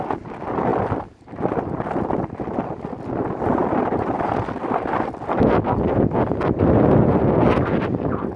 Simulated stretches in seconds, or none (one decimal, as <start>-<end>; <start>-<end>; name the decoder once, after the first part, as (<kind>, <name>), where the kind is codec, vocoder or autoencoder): none